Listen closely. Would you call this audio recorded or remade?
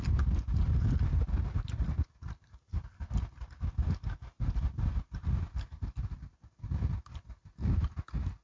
recorded